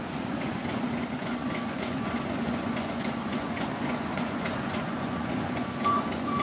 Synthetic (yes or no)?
yes